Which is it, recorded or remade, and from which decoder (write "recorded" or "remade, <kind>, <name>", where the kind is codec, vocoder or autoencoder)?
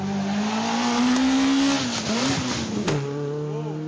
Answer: recorded